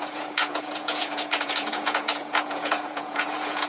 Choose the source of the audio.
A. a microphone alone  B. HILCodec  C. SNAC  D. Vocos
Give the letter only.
D